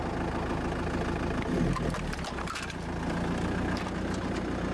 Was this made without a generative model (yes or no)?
yes